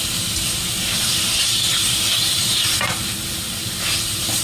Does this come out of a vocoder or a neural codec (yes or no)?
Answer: yes